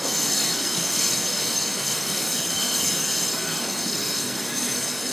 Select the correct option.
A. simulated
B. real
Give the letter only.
A